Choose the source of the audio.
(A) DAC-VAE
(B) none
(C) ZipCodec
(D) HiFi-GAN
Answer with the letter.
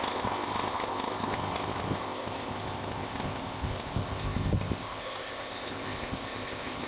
C